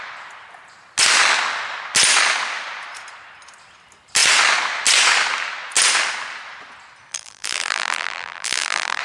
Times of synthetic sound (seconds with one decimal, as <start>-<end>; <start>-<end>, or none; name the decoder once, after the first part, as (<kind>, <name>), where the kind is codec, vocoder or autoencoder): 7.1-9.0 (vocoder, BigVGAN v2)